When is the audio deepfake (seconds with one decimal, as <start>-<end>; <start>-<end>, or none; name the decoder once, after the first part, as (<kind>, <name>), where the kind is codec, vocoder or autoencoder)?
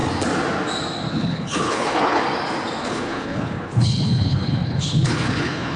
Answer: 1.1-2.2 (codec, HILCodec); 2.8-5.8